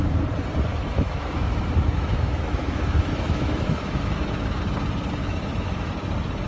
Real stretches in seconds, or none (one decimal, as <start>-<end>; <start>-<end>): 0.0-0.7; 4.6-5.2; 5.9-6.5